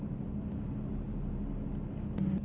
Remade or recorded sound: recorded